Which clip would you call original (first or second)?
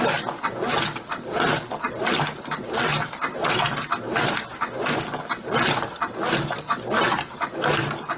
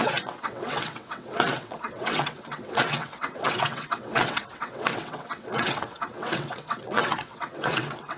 first